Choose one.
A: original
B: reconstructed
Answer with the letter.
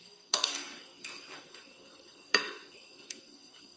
B